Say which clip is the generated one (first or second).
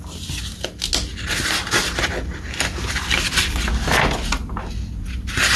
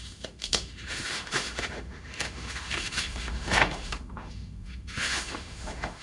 second